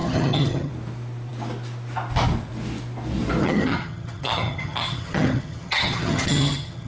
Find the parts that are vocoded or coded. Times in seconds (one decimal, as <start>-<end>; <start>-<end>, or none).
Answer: 0.0-0.7; 3.4-6.9